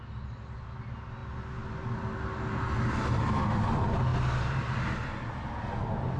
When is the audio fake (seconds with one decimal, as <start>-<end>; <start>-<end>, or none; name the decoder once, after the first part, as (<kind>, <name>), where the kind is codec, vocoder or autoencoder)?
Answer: none